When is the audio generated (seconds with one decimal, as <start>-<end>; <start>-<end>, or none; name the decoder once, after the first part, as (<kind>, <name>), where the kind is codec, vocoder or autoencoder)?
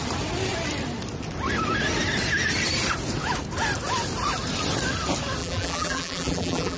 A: 5.4-6.8 (vocoder, BigVGAN v2)